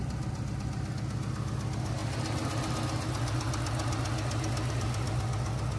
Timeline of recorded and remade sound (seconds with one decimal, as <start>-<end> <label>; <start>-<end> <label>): 0.0-5.8 recorded